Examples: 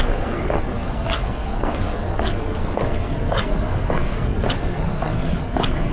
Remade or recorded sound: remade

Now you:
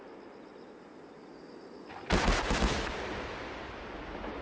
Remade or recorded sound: recorded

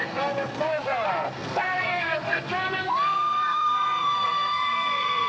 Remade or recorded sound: remade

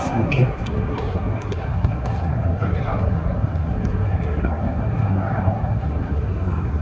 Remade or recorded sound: remade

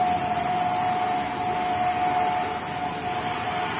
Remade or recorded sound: recorded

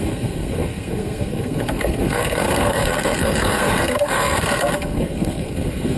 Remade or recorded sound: remade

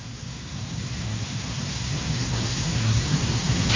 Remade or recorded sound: remade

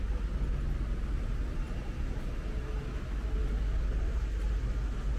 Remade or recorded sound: recorded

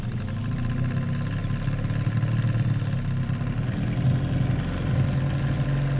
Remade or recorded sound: recorded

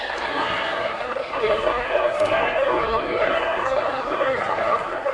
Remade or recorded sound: remade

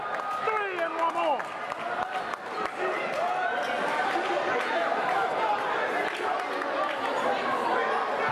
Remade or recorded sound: recorded